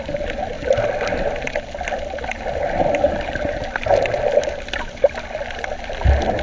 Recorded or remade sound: recorded